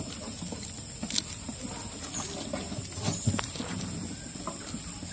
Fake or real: real